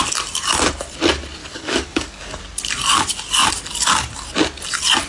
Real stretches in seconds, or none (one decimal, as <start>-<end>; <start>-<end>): 0.0-1.4; 2.4-5.1